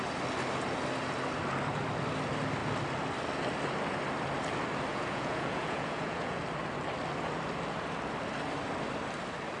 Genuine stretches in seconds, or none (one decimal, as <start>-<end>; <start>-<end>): 0.0-4.9; 6.4-9.6